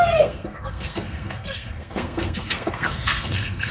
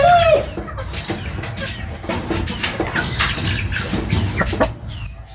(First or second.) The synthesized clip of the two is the first